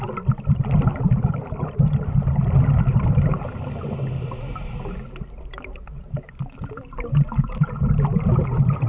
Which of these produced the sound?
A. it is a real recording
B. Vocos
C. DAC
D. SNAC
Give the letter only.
A